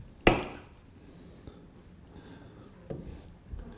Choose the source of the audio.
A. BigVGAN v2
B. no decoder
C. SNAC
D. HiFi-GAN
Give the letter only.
B